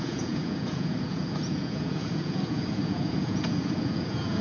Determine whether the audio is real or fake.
fake